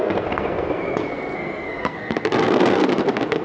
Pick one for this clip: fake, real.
fake